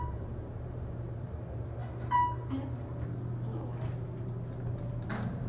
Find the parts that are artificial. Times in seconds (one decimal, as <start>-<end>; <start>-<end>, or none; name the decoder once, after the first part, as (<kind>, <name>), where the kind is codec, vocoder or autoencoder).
0.0-1.8 (vocoder, BigVGAN v2); 5.1-5.5